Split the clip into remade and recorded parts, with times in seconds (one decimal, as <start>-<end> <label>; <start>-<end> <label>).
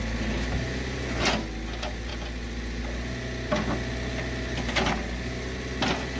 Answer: 0.0-6.2 recorded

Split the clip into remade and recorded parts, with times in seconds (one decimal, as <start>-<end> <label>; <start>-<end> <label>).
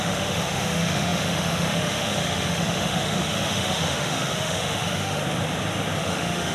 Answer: 0.0-5.2 remade; 5.2-6.0 recorded; 6.0-6.5 remade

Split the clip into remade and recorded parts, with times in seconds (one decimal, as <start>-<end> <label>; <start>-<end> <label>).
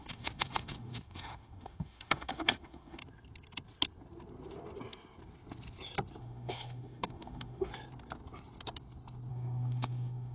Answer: 0.0-3.0 remade; 3.0-6.2 recorded; 6.2-7.7 remade; 7.7-9.3 recorded; 9.3-10.3 remade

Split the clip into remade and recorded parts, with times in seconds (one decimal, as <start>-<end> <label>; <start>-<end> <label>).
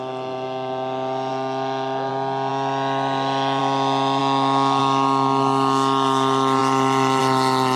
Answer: 0.0-1.3 recorded; 1.3-2.1 remade; 2.1-4.2 recorded; 4.2-4.8 remade; 4.8-7.8 recorded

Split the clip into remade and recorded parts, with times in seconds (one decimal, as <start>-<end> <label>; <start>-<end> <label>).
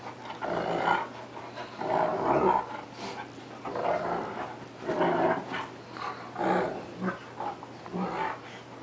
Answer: 0.0-8.8 recorded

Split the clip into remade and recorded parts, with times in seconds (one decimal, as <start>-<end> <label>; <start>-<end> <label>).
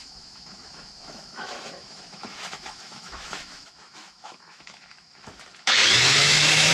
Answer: 0.0-6.7 remade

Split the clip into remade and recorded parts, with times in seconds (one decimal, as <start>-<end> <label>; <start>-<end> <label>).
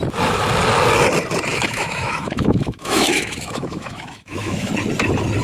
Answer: 0.0-1.5 recorded; 1.5-4.7 remade; 4.7-5.4 recorded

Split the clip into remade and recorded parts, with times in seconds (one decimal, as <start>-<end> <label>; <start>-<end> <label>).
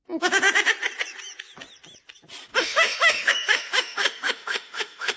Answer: 0.0-2.5 recorded; 2.5-5.2 remade